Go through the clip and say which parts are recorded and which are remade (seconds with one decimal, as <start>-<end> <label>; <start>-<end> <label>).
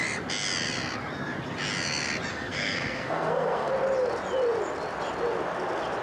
0.0-2.3 recorded; 2.3-3.7 remade; 3.7-6.0 recorded